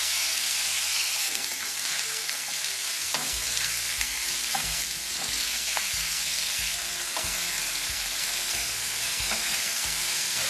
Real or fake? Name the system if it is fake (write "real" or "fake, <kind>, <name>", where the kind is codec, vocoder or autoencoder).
fake, codec, SNAC